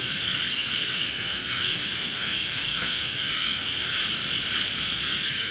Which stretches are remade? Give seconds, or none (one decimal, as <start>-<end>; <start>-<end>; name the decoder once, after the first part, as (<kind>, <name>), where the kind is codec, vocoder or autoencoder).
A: 0.0-4.0 (codec, SNAC); 4.6-5.5